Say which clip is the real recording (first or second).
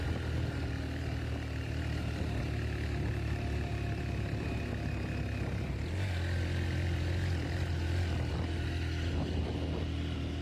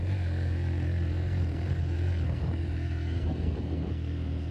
first